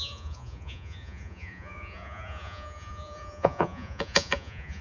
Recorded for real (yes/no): no